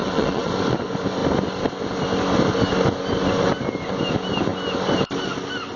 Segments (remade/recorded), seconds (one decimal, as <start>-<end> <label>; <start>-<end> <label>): 0.0-0.5 remade; 0.5-5.8 recorded